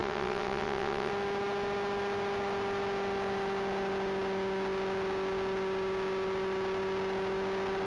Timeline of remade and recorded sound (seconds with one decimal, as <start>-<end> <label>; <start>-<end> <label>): 0.0-1.1 remade; 1.1-7.9 recorded